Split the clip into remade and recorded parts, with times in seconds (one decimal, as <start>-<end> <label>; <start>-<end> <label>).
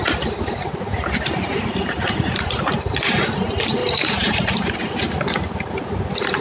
0.0-3.8 recorded; 3.8-4.8 remade; 4.8-6.4 recorded